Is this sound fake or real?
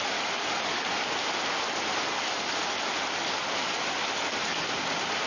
real